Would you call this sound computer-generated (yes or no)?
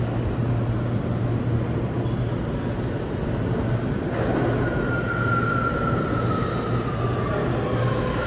no